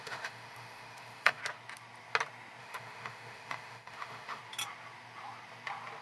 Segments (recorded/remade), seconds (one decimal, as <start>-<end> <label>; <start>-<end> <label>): 0.0-1.4 remade; 1.4-2.6 recorded; 2.6-4.4 remade; 4.4-6.0 recorded